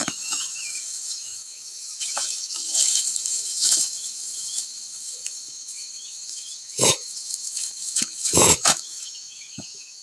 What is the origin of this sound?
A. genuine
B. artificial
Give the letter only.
B